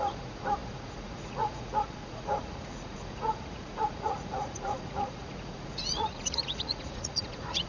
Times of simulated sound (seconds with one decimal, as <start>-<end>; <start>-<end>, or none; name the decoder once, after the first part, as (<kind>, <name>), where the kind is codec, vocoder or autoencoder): 0.0-7.7 (vocoder, Vocos)